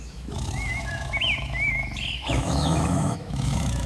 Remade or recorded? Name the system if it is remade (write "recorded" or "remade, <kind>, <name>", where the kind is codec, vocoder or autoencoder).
remade, autoencoder, DAC-VAE